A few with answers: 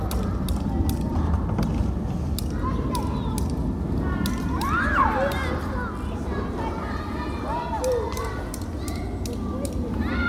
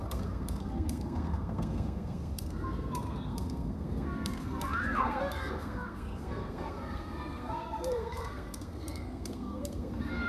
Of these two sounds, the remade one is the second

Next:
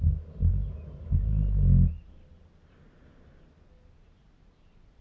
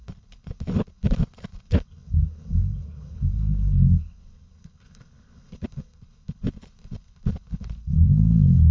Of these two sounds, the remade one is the second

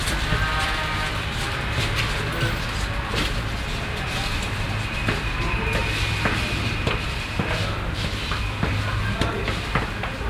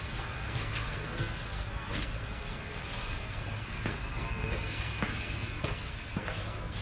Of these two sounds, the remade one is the second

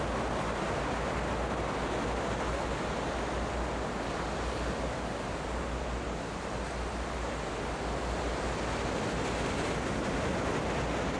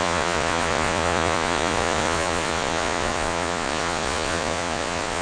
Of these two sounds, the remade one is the second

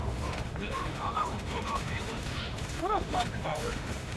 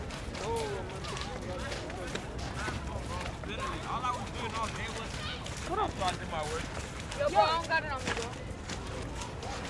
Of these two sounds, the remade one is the first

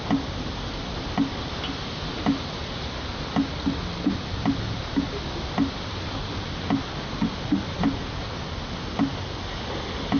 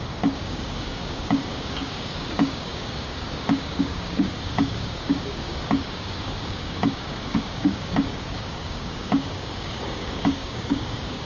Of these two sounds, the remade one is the second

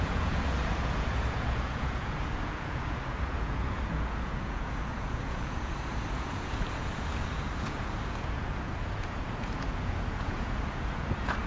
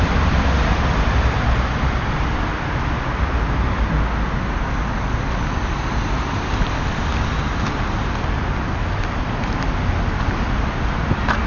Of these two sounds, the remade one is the first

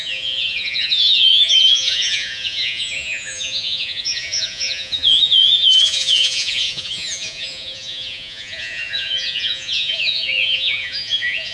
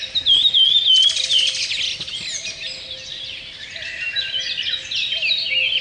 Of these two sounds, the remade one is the first